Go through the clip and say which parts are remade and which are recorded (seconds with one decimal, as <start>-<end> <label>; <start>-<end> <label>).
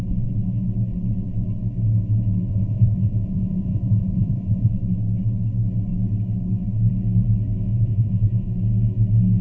0.0-2.5 recorded; 2.5-4.7 remade; 4.7-7.7 recorded; 7.7-8.5 remade; 8.5-9.4 recorded